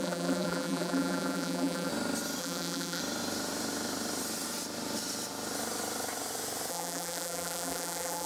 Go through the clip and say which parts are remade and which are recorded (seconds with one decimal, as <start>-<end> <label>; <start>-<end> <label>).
0.0-1.9 remade; 1.9-2.4 recorded; 2.4-3.0 remade; 3.0-6.7 recorded; 6.7-8.3 remade